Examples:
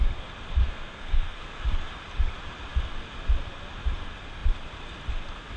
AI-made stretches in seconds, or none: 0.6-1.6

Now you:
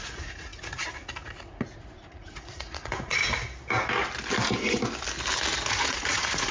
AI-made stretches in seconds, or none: 0.0-3.2; 5.7-6.5

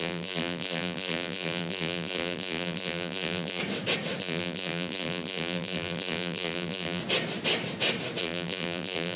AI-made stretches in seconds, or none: 0.0-3.6; 4.2-7.0; 8.2-9.2

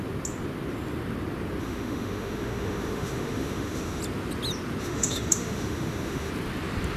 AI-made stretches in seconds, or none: 1.6-4.0; 4.8-6.3

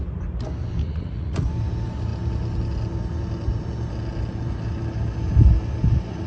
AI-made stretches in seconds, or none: 0.8-1.4

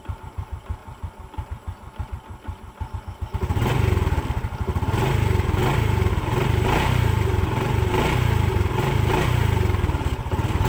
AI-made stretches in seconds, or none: 0.0-0.8; 6.1-10.7

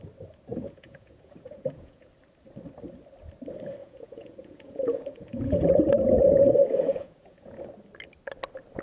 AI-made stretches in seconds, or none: 0.5-2.1; 3.8-7.7